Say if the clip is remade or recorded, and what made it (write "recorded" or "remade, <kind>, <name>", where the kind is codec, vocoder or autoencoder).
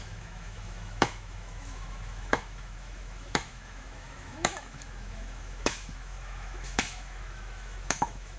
remade, autoencoder, DAC-VAE